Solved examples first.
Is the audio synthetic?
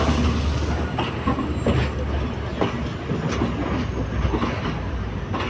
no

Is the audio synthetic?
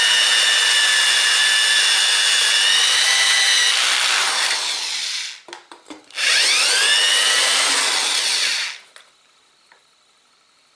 no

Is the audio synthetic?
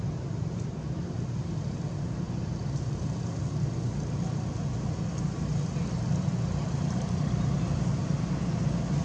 no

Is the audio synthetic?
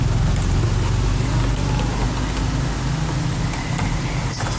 no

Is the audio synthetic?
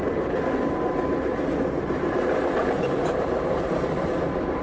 no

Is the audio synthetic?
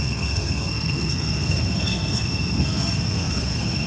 yes